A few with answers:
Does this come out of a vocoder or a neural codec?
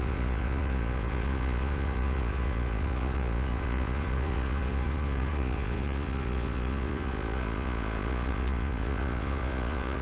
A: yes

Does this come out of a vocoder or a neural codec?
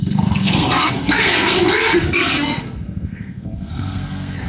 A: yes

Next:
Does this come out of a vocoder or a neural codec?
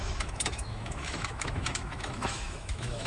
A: yes